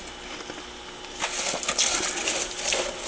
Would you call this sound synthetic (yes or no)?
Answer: no